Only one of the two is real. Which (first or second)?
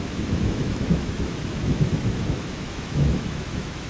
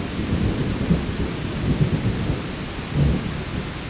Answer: second